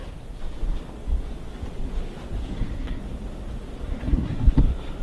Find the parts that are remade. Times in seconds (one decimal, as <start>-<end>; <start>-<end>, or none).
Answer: 2.4-3.0; 3.9-4.5

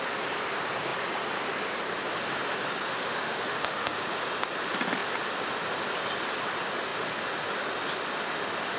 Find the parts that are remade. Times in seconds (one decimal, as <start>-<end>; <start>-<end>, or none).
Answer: 2.9-4.0

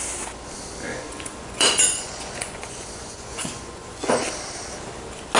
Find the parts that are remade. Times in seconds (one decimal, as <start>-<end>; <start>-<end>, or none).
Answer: 0.9-4.1

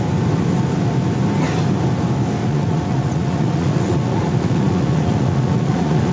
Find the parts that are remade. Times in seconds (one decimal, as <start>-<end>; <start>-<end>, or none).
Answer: 2.4-6.1

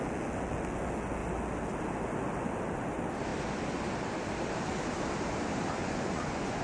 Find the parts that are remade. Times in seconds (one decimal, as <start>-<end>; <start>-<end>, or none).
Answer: 5.8-6.6

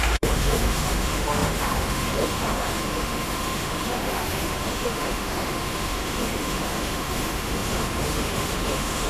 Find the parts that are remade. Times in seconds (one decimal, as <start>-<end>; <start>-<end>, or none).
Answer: 0.0-9.1